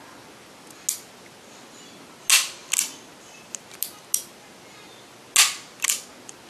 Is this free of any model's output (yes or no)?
yes